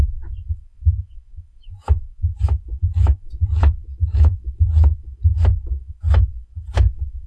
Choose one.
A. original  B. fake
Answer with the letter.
B